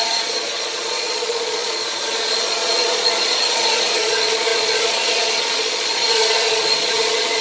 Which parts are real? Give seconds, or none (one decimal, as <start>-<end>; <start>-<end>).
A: none